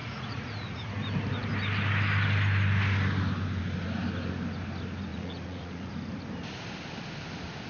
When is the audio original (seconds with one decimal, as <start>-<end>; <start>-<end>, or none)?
0.9-5.1; 5.9-7.7